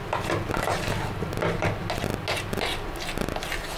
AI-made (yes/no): no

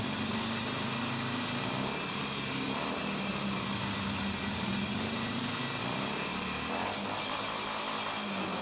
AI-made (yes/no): no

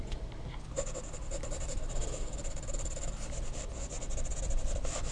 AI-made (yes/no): no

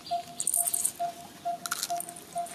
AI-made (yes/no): no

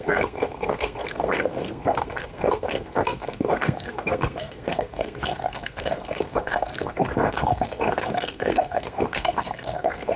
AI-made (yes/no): yes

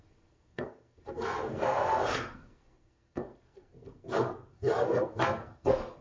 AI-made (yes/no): yes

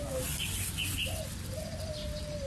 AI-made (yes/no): no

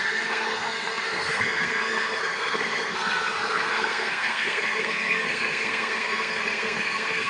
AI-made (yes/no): yes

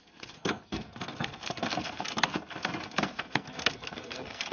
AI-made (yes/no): yes